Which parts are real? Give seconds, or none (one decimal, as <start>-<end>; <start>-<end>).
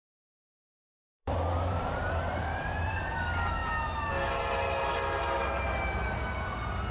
3.0-6.9